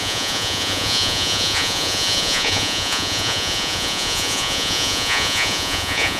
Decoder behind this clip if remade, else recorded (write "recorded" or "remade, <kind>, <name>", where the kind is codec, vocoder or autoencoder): remade, vocoder, Vocos